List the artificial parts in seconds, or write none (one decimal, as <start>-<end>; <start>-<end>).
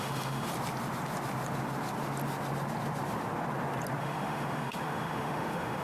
0.0-0.5; 4.0-5.8